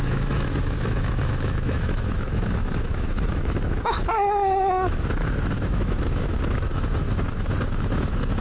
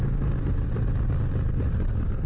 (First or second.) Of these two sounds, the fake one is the first